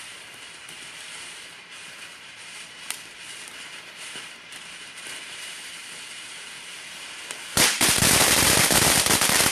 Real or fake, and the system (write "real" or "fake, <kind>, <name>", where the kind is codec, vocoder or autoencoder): fake, vocoder, BigVGAN v2